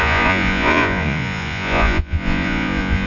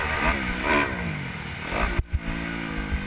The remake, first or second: first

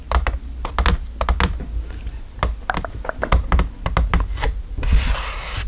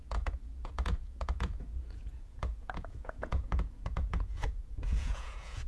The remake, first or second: second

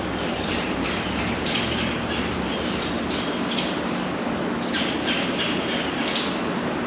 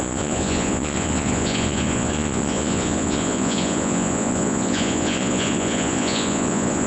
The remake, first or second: second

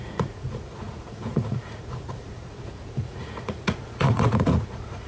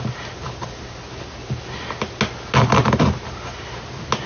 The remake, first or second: first